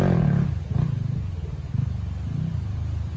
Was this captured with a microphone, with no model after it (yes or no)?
yes